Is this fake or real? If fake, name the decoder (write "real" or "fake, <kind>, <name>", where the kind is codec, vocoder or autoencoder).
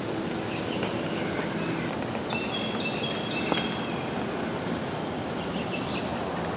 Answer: real